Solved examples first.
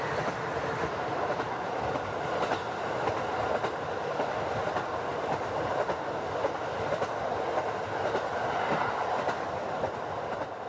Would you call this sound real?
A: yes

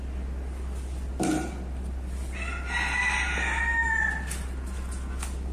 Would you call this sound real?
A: yes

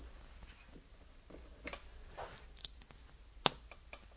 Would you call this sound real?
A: yes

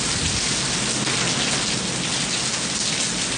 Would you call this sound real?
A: yes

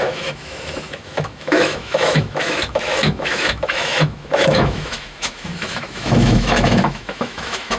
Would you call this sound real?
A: no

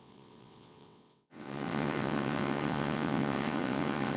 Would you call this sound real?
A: no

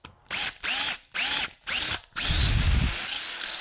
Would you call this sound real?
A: yes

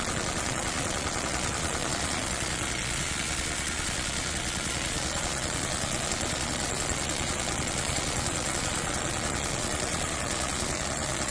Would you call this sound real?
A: no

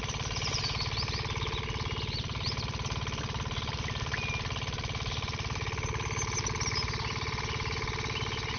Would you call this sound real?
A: yes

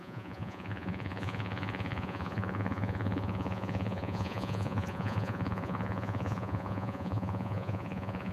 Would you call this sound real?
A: no